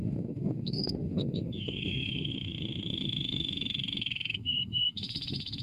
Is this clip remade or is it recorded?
remade